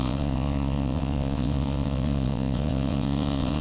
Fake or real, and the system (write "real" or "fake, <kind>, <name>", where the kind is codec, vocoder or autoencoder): fake, vocoder, WaveNeXt